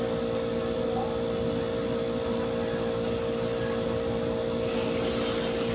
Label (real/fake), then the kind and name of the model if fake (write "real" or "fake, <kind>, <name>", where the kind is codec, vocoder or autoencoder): real